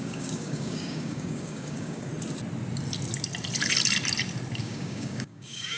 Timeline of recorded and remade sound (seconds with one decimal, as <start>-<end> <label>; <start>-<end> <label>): 0.0-2.1 remade; 2.1-4.6 recorded; 4.6-5.8 remade